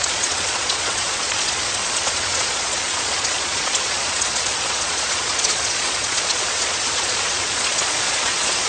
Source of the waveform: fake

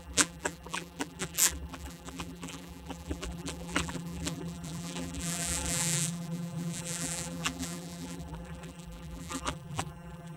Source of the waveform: fake